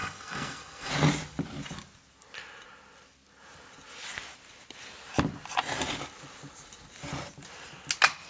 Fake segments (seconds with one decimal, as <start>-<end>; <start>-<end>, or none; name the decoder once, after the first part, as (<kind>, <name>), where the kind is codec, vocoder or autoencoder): 0.0-0.9 (codec, SNAC)